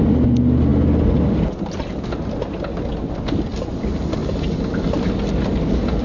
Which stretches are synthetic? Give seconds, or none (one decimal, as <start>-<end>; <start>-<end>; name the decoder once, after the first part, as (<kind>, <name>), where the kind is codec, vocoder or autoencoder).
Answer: none